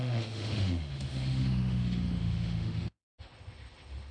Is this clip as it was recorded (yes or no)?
no